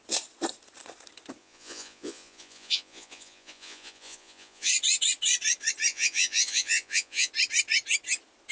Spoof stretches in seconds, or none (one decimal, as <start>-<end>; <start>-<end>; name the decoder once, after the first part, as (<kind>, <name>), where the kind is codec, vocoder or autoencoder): 1.4-4.7 (vocoder, Vocos); 5.9-7.3